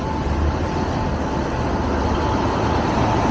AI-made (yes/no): no